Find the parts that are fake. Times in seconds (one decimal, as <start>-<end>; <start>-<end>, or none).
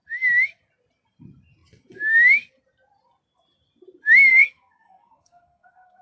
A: 4.3-6.0